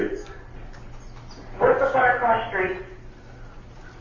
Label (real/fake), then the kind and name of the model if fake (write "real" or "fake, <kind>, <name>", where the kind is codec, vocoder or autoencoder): real